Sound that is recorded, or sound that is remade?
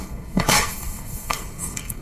remade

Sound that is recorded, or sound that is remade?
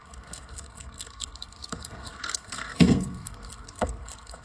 remade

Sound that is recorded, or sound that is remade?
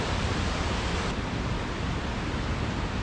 recorded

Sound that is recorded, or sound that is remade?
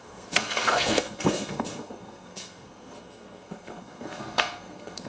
remade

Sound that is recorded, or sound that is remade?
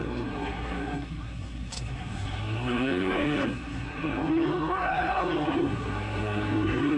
remade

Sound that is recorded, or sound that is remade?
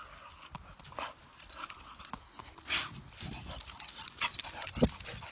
recorded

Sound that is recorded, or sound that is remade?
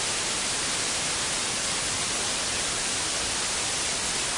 recorded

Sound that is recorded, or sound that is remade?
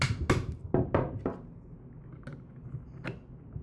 recorded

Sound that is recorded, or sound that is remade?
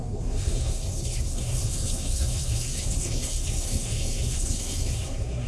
remade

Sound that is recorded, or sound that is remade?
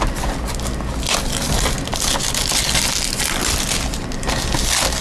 recorded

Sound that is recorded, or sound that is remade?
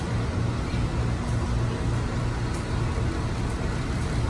recorded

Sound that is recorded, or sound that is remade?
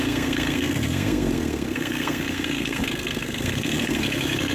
remade